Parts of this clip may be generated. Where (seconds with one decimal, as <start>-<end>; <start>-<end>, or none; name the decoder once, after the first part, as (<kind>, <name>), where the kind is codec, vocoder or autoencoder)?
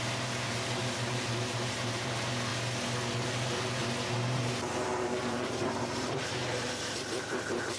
0.0-2.5 (vocoder, BigVGAN v2); 4.1-7.8